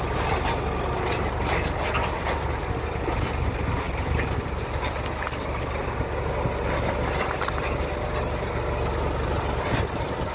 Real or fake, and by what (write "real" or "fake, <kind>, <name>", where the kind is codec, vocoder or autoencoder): real